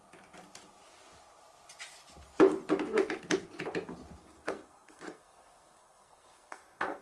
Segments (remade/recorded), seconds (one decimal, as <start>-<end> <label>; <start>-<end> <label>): 0.0-4.2 recorded; 4.2-7.0 remade